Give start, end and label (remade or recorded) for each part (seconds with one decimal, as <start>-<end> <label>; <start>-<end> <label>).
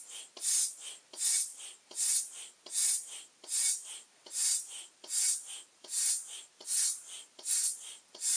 0.0-8.4 recorded